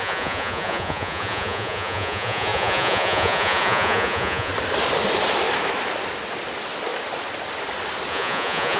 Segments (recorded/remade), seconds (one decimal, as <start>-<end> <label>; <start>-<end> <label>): 0.0-4.5 remade; 4.5-8.1 recorded; 8.1-8.8 remade